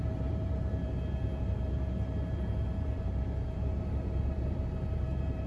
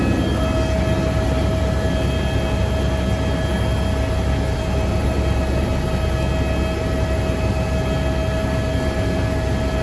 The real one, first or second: second